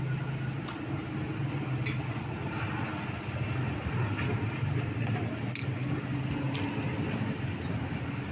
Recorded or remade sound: recorded